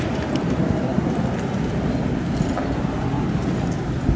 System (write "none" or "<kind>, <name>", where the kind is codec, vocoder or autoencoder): none